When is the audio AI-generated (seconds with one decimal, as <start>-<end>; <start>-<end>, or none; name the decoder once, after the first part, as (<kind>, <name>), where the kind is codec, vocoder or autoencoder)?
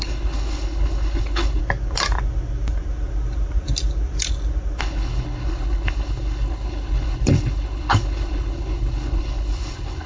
0.0-1.6 (codec, HILCodec); 4.8-10.1